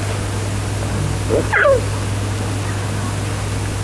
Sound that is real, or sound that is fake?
real